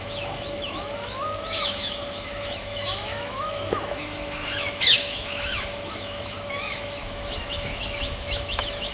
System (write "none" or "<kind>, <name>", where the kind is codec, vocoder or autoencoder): autoencoder, DAC-VAE